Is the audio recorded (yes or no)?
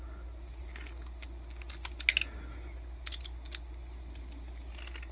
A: yes